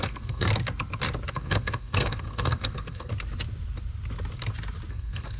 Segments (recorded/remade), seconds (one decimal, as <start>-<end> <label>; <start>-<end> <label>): 0.0-0.5 remade; 0.5-1.3 recorded; 1.3-3.1 remade; 3.1-4.9 recorded; 4.9-5.4 remade